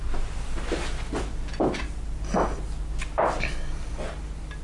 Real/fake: real